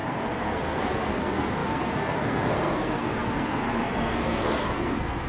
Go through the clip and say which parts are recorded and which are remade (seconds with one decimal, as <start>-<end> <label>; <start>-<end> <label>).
0.0-5.3 remade